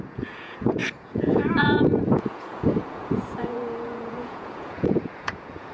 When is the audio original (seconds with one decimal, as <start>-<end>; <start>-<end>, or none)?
none